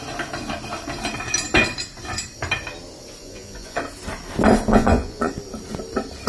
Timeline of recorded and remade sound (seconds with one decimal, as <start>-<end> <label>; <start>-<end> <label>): 0.0-3.2 recorded; 3.2-3.8 remade; 3.8-4.7 recorded; 4.7-5.3 remade; 5.3-6.3 recorded